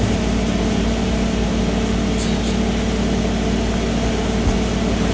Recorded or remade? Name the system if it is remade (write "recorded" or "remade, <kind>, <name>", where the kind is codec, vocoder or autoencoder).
recorded